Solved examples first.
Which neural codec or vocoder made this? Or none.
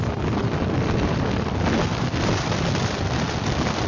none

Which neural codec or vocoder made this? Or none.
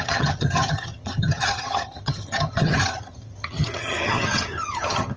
vocoder, HiFi-GAN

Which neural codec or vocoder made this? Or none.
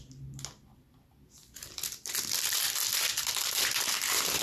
none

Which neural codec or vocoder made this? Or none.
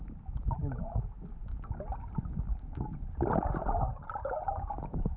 none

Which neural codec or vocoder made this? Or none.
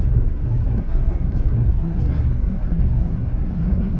codec, SNAC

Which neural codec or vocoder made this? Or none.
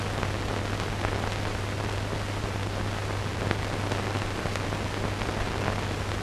none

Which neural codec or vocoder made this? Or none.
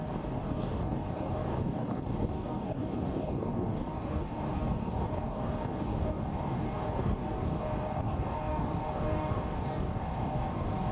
codec, DAC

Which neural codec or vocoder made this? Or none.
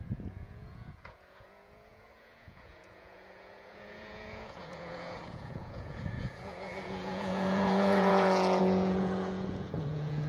vocoder, Vocos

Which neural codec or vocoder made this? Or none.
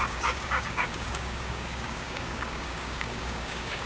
codec, DAC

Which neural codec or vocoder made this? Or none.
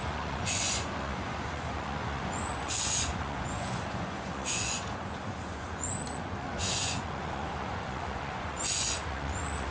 vocoder, Vocos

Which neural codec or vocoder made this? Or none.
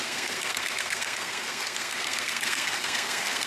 codec, SNAC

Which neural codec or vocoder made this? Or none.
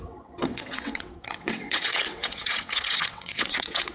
vocoder, WaveNeXt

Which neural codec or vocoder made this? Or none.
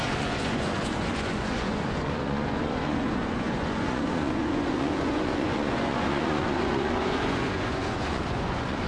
vocoder, Vocos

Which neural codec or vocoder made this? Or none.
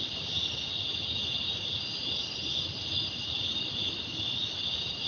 none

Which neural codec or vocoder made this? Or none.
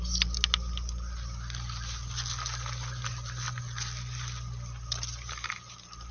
none